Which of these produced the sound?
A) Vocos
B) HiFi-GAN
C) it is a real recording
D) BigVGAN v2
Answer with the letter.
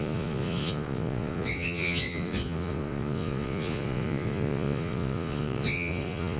A